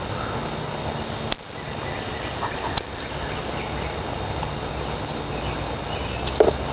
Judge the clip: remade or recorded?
recorded